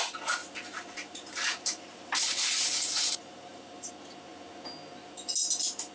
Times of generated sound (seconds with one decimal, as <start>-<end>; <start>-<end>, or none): 0.4-3.9

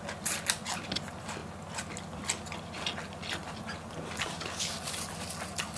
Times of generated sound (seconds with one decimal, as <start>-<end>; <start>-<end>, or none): none

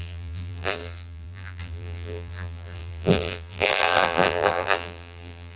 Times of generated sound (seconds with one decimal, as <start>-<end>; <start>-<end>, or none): 0.0-5.6

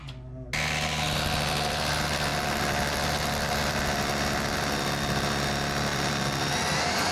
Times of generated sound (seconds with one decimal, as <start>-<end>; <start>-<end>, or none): 2.3-5.2; 5.9-6.5

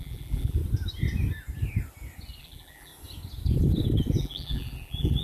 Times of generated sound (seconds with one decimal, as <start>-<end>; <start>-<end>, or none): 0.0-0.6; 2.4-2.9; 4.2-5.2

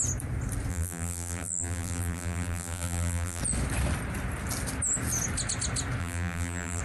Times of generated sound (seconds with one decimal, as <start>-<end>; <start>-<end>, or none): 0.7-3.4; 6.0-6.8

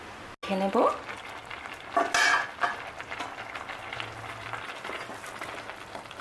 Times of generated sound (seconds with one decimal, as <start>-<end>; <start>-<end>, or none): none